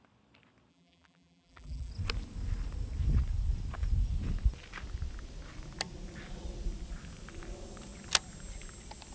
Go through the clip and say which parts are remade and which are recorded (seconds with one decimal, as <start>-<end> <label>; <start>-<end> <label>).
0.0-0.7 recorded; 0.7-1.9 remade; 1.9-9.1 recorded